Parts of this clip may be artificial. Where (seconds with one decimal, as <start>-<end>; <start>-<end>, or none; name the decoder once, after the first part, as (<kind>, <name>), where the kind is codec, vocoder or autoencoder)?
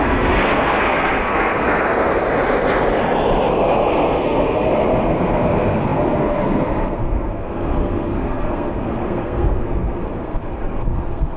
0.0-2.2 (codec, SNAC); 3.5-11.4